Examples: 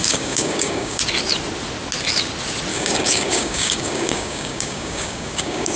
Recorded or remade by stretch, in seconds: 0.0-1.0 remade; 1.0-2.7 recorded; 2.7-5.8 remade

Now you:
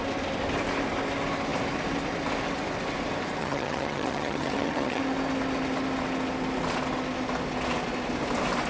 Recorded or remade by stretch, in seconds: 0.0-3.4 recorded; 3.4-5.0 remade; 5.0-8.7 recorded

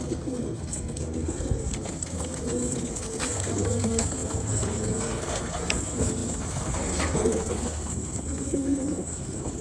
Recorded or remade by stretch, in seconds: 0.0-9.6 remade